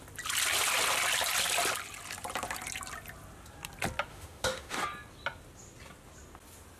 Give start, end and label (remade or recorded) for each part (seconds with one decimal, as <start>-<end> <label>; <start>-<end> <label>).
0.0-4.1 recorded; 4.1-4.8 remade; 4.8-6.8 recorded